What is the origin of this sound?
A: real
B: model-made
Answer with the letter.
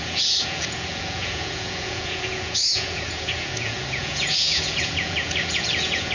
B